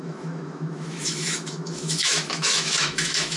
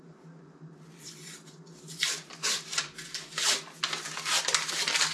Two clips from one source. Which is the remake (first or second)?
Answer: first